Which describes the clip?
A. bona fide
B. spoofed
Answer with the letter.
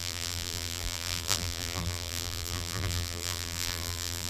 B